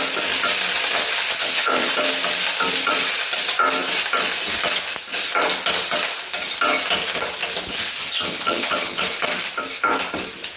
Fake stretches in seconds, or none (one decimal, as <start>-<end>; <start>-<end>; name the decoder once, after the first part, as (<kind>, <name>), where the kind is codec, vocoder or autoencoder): 1.4-1.9 (vocoder, HiFi-GAN); 8.0-9.0

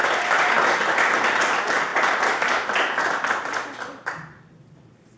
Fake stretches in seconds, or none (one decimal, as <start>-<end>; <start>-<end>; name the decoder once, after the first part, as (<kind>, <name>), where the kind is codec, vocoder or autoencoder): none